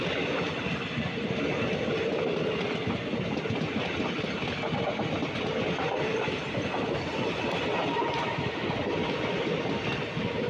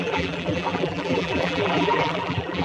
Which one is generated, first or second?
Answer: second